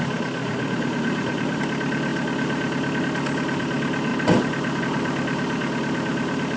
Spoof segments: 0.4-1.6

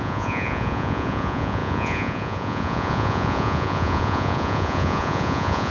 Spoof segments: 0.0-5.7

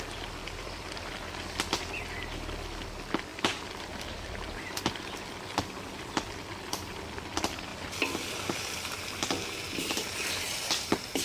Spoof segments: 0.4-1.1; 3.3-4.8; 7.7-8.9

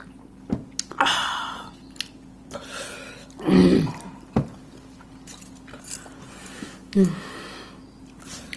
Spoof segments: 6.4-7.8

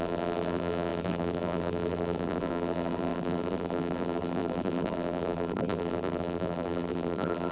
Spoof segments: 0.0-7.5

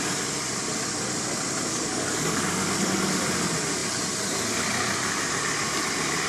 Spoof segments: 1.7-3.2

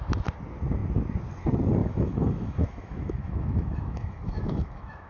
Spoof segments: 1.8-5.1

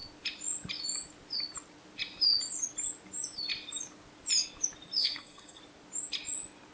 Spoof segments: 5.0-5.6